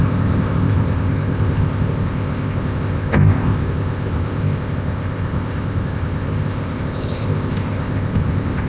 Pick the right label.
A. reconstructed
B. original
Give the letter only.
A